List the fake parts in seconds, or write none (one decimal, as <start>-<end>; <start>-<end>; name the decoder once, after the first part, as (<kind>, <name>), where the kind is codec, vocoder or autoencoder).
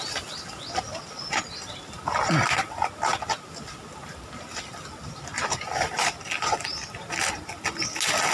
none